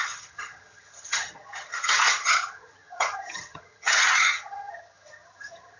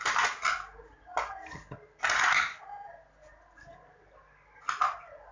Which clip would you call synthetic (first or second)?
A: first